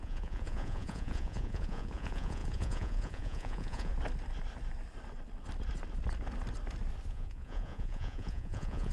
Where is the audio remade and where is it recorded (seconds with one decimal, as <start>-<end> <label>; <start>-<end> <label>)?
0.0-3.9 remade; 3.9-7.1 recorded; 7.1-8.9 remade